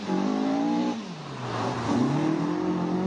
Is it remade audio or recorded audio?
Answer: recorded